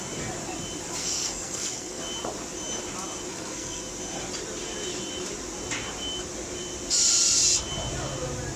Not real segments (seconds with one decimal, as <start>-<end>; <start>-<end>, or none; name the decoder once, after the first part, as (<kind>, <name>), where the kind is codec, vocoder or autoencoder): 1.0-2.0 (codec, SNAC); 3.3-3.8